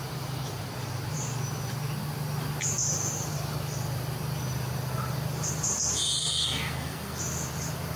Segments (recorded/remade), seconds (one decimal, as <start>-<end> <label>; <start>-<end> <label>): 0.0-6.2 recorded; 6.2-7.2 remade; 7.2-8.0 recorded